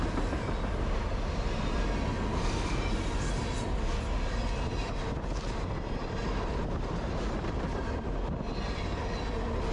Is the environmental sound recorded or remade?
recorded